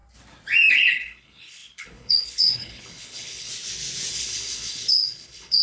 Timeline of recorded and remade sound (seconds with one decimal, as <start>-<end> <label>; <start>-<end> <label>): 0.0-0.7 recorded; 0.7-3.5 remade; 3.5-4.1 recorded; 4.1-5.6 remade